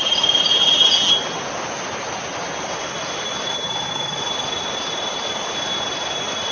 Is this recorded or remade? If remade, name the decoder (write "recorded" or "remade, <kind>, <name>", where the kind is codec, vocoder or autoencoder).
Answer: recorded